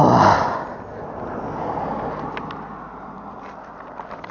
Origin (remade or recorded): recorded